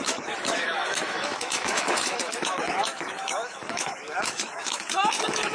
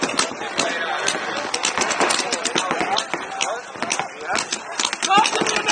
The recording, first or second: second